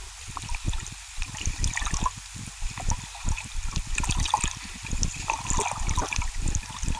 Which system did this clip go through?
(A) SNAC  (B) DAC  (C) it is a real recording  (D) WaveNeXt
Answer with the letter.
C